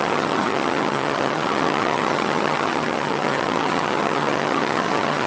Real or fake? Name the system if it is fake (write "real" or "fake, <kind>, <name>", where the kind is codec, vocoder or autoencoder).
fake, vocoder, HiFi-GAN